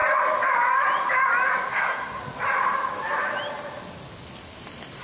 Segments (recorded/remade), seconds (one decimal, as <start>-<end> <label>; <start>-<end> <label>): 0.0-1.7 recorded; 1.7-2.2 remade; 2.2-5.0 recorded